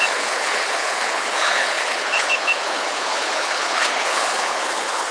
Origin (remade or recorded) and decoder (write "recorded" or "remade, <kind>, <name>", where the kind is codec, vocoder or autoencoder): remade, codec, HILCodec